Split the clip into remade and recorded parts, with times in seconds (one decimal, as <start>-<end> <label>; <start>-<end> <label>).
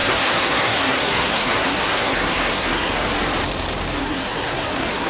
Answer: 0.0-3.1 remade; 3.1-4.0 recorded; 4.0-5.1 remade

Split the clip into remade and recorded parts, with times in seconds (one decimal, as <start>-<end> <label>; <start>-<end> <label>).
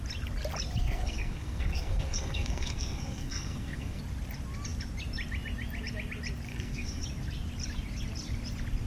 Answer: 0.0-0.8 recorded; 0.8-4.0 remade; 4.0-6.5 recorded; 6.5-7.0 remade; 7.0-8.9 recorded